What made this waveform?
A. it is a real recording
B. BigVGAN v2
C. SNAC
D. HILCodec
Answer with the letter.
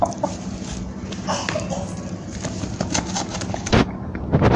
A